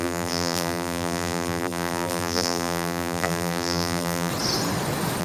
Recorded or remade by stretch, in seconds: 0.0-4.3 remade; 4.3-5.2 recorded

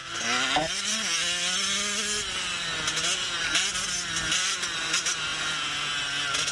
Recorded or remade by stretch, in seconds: 0.0-6.5 recorded

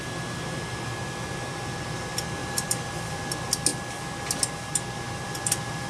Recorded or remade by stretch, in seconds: 0.0-2.4 recorded; 2.4-3.1 remade; 3.1-5.9 recorded

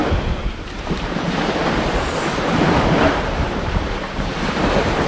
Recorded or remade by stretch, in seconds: 0.0-3.1 recorded; 3.1-5.1 remade

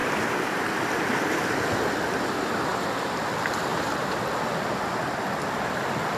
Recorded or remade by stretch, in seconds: 0.0-0.6 remade; 0.6-6.2 recorded

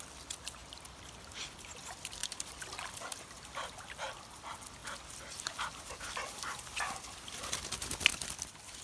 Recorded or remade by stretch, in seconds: 0.0-0.6 remade; 0.6-1.5 recorded; 1.5-4.8 remade; 4.8-5.4 recorded; 5.4-8.8 remade

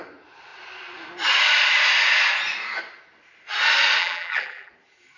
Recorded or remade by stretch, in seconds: 0.0-4.0 recorded; 4.0-4.7 remade; 4.7-5.2 recorded

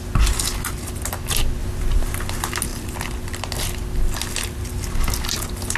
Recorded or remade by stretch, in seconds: 0.0-1.6 recorded; 1.6-2.2 remade; 2.2-2.7 recorded; 2.7-3.5 remade; 3.5-5.8 recorded